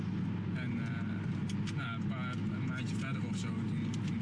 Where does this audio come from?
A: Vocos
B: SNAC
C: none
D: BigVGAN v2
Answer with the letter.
C